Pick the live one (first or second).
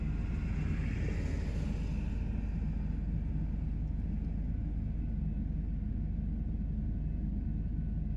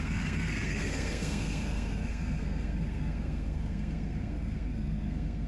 first